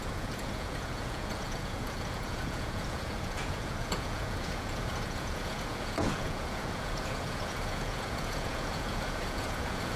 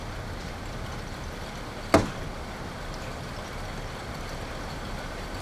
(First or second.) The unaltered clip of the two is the second